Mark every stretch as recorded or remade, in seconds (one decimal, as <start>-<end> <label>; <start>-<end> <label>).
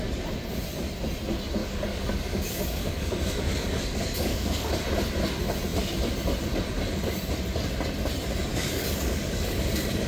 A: 0.0-1.6 recorded; 1.6-4.7 remade; 4.7-8.5 recorded; 8.5-10.1 remade